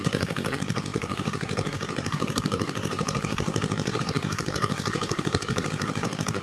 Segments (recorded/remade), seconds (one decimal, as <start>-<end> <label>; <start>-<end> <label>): 0.0-6.4 remade